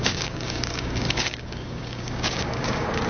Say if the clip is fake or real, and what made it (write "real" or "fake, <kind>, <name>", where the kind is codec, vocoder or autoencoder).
fake, codec, DAC